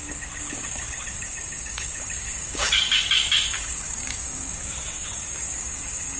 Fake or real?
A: fake